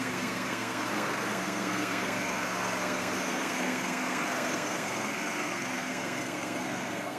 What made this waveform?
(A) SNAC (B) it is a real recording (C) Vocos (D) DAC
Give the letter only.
A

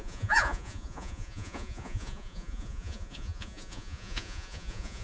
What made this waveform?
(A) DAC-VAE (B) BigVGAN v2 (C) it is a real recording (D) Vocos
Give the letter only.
D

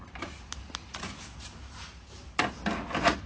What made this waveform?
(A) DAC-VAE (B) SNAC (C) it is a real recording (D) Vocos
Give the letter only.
C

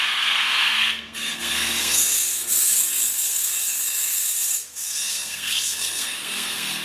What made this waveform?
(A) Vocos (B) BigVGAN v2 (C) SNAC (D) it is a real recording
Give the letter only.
C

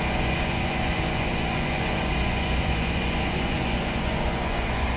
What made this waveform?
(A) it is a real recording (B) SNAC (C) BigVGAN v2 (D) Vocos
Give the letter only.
D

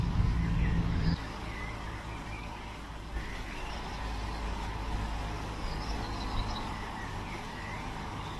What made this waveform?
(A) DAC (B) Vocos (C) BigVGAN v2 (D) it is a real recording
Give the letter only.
A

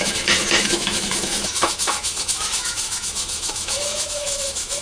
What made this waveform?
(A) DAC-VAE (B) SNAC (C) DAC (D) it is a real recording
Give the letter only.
A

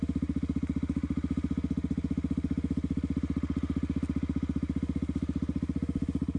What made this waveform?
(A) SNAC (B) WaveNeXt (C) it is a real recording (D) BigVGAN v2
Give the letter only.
C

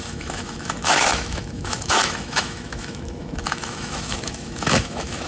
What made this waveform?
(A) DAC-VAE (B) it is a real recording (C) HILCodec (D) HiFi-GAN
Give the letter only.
A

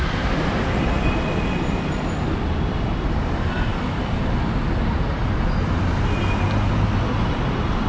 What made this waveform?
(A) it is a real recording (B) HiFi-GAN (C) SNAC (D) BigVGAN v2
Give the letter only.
A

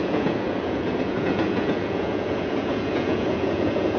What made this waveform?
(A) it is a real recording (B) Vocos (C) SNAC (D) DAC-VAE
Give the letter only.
B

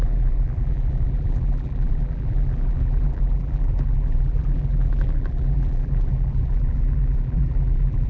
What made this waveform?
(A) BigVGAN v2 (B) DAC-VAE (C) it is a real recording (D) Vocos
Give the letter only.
A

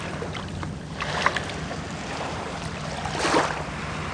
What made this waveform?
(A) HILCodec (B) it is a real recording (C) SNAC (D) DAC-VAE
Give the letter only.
B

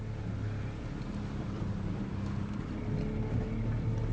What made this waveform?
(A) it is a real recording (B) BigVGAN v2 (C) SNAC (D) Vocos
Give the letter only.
A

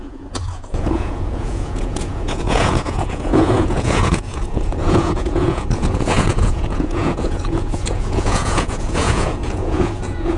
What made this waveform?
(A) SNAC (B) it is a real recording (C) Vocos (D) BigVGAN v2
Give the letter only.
C